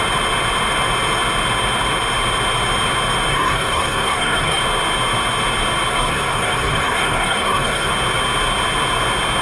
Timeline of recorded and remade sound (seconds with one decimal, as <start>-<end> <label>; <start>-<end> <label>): 0.0-3.3 recorded; 3.3-4.6 remade; 4.6-5.9 recorded; 5.9-7.9 remade; 7.9-9.4 recorded